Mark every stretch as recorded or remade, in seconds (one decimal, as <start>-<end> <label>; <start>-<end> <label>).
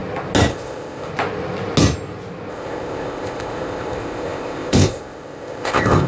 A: 0.0-0.5 recorded; 0.5-1.1 remade; 1.1-2.5 recorded; 2.5-6.1 remade